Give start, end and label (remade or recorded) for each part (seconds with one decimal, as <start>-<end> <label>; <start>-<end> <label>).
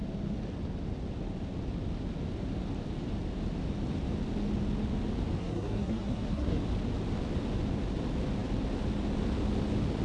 0.0-5.4 recorded; 5.4-6.6 remade; 6.6-10.0 recorded